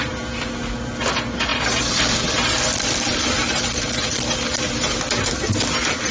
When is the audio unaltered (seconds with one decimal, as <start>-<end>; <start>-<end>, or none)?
0.0-6.1